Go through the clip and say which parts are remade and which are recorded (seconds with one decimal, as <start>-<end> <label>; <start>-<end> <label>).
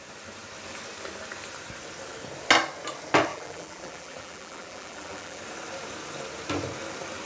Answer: 0.0-3.3 recorded; 3.3-5.4 remade; 5.4-7.3 recorded